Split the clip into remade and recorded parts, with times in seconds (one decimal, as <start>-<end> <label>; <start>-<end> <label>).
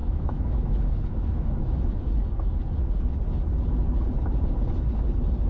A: 0.0-2.1 remade; 2.1-5.5 recorded